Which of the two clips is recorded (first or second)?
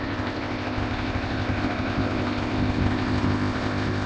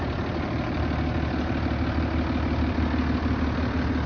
second